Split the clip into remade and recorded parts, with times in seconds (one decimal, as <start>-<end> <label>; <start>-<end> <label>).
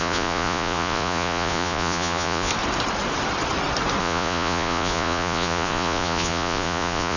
0.0-2.5 remade; 2.5-4.0 recorded; 4.0-7.2 remade